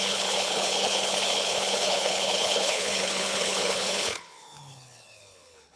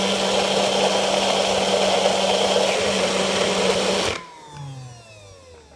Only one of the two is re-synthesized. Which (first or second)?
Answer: first